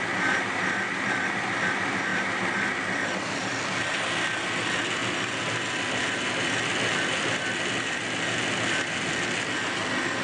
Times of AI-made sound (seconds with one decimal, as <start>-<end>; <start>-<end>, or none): 0.0-5.0